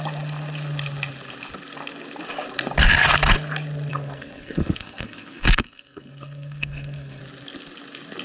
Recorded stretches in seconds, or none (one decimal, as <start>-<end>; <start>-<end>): 0.0-3.9; 7.2-8.2

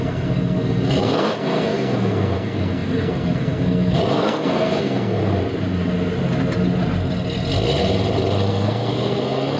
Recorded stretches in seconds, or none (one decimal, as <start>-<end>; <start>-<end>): 5.2-8.5

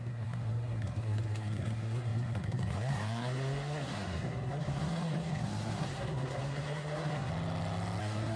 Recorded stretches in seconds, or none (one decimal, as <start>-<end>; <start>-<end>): 7.3-8.0

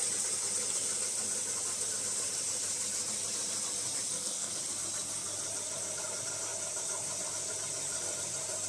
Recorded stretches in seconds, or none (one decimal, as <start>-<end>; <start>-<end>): 0.0-4.1; 4.6-8.7

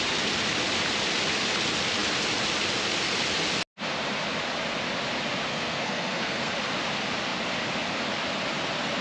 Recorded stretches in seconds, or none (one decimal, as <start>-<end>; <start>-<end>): 0.0-5.5; 6.5-9.0

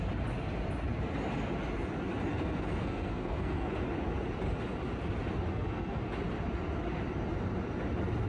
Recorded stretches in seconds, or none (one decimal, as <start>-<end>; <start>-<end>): 0.0-2.3; 3.7-5.5; 6.0-8.3